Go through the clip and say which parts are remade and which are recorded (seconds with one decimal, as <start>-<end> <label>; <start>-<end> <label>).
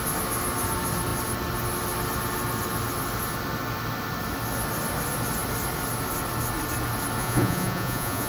0.0-7.2 recorded; 7.2-8.3 remade